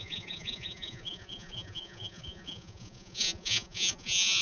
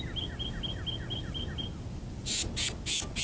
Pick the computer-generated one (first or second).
first